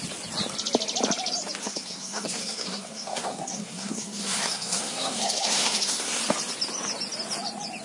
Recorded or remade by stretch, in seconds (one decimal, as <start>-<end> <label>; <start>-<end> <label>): 0.0-1.6 recorded; 1.6-6.2 remade; 6.2-7.8 recorded